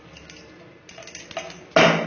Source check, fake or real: real